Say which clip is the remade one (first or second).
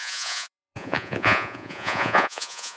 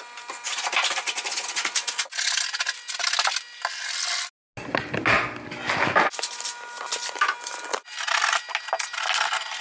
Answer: first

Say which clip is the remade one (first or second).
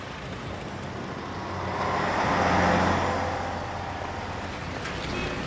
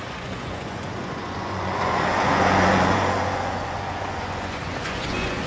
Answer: second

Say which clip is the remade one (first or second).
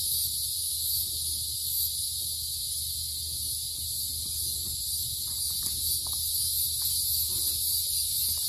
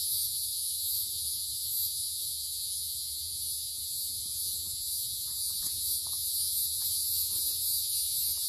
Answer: second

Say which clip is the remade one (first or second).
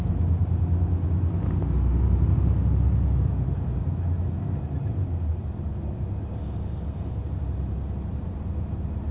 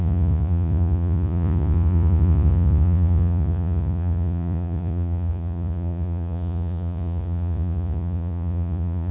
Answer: second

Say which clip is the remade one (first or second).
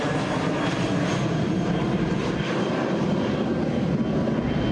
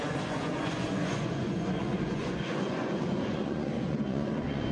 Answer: second